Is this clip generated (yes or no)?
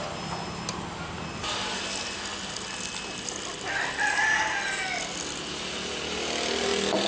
no